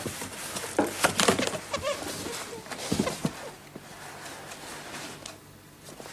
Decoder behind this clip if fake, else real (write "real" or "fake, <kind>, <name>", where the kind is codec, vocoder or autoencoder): real